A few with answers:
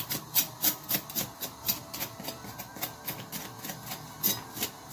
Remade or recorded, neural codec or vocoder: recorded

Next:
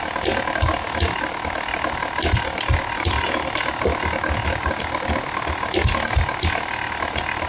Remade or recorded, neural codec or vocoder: recorded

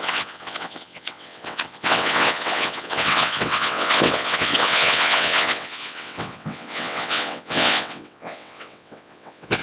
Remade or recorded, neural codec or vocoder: remade, vocoder, WaveNeXt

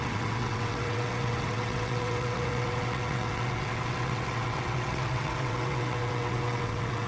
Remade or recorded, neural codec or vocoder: remade, vocoder, WaveNeXt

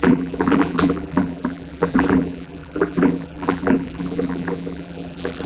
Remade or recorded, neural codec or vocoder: remade, vocoder, BigVGAN v2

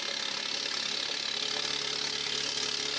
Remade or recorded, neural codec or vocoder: recorded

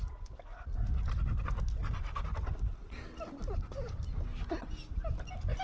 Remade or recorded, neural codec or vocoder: recorded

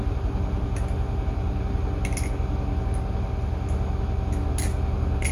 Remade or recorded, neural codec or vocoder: recorded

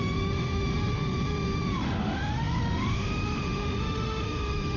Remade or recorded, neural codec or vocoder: remade, autoencoder, DAC-VAE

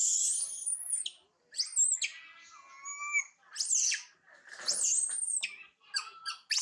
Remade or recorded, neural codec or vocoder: recorded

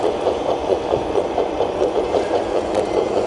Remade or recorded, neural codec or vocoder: remade, vocoder, Vocos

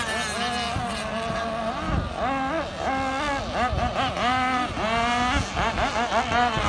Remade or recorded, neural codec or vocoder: recorded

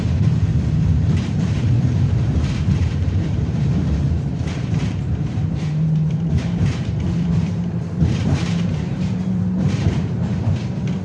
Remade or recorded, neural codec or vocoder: remade, vocoder, BigVGAN v2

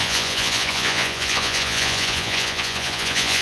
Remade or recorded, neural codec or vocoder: remade, vocoder, Vocos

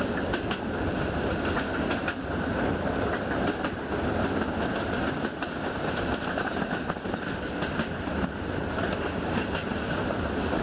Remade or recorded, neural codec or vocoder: recorded